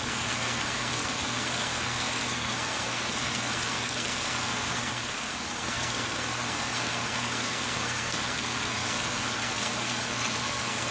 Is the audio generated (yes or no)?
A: yes